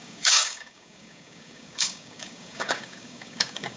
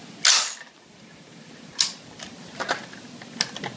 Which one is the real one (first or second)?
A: second